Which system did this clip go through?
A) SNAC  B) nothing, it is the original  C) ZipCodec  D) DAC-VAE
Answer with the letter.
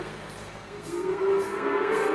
A